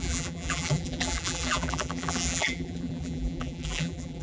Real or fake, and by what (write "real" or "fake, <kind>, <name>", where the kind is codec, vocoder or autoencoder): fake, vocoder, BigVGAN v2